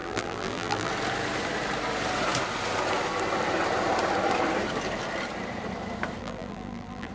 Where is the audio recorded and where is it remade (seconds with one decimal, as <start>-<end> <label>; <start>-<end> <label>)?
0.0-0.9 remade; 0.9-6.2 recorded; 6.2-7.1 remade